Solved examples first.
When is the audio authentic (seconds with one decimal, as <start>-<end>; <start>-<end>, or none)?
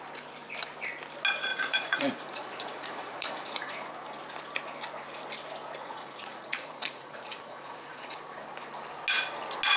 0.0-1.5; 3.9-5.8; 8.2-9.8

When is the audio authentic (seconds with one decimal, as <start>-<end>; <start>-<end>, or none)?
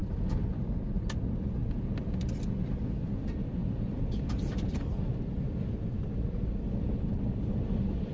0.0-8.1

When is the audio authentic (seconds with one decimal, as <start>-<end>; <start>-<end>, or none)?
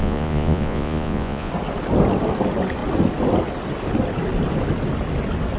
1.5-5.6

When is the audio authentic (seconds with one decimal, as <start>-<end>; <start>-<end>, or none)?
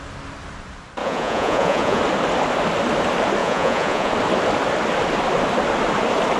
0.0-1.0; 2.0-3.4; 4.1-6.4